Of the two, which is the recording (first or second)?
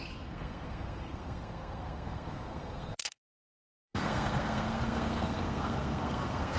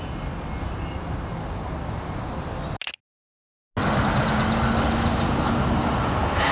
second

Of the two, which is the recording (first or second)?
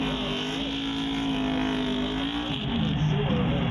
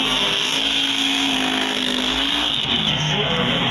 first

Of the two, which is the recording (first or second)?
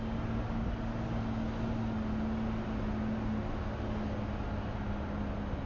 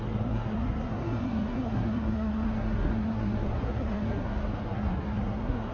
first